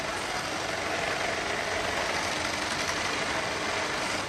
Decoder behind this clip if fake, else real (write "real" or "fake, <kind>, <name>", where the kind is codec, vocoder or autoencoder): real